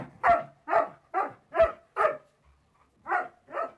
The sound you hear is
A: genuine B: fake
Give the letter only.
A